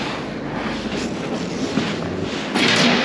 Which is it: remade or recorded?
recorded